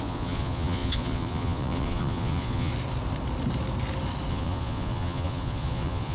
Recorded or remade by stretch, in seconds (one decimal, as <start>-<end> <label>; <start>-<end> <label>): 0.0-2.7 remade; 2.7-4.3 recorded; 4.3-6.1 remade